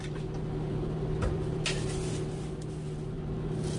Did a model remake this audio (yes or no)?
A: no